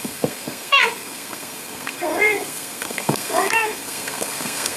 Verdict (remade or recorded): remade